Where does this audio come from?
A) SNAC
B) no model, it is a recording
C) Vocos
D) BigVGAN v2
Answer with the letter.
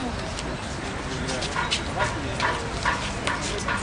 B